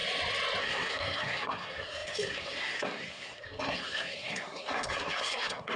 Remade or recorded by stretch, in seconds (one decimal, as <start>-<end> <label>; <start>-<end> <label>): 0.0-0.6 recorded; 0.6-5.8 remade